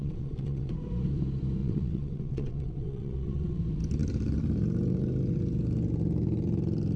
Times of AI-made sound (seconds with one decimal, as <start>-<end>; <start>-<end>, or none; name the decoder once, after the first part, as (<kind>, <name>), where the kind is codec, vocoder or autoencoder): 0.0-0.7 (vocoder, WaveNeXt); 1.6-3.6